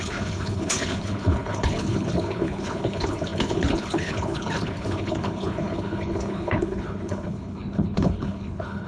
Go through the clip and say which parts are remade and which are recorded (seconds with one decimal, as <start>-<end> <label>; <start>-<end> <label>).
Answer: 0.0-8.9 remade